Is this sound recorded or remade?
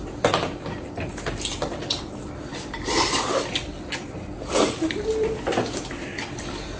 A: remade